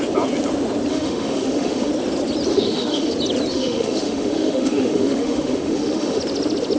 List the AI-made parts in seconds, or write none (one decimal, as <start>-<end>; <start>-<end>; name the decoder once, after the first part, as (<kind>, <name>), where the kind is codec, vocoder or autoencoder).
0.9-1.9 (autoencoder, DAC-VAE); 2.5-3.1; 3.5-6.2